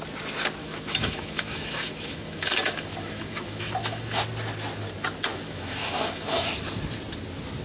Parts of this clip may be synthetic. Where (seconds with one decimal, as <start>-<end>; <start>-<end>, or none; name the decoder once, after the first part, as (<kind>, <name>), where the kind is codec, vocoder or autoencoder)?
0.6-4.2 (autoencoder, DAC-VAE); 5.3-6.4

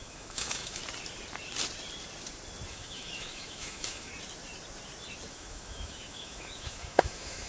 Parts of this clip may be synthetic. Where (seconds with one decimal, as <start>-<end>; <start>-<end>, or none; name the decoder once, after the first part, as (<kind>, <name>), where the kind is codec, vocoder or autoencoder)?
0.0-0.8 (autoencoder, DAC-VAE); 2.7-4.1; 5.3-7.5